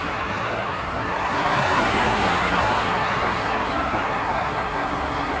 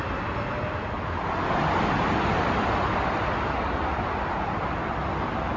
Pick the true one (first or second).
second